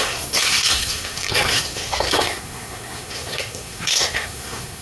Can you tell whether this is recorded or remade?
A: remade